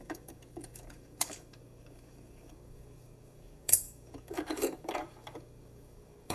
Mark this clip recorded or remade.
remade